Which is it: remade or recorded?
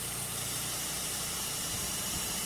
remade